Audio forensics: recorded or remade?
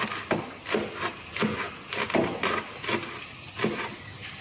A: recorded